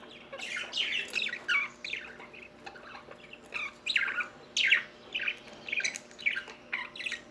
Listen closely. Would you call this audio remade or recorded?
recorded